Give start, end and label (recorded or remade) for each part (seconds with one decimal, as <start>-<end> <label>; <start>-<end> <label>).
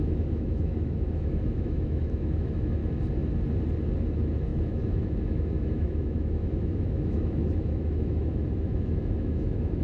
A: 0.0-2.8 remade; 2.8-4.1 recorded; 4.1-9.8 remade